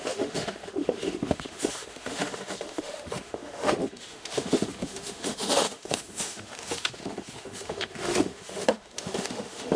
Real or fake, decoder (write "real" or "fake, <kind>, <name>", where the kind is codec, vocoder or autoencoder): fake, autoencoder, DAC-VAE